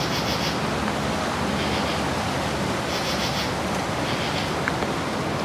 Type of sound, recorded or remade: recorded